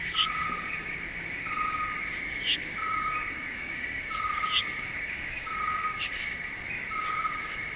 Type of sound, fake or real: fake